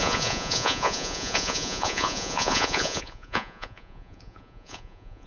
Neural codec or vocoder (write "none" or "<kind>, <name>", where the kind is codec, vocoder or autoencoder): vocoder, Vocos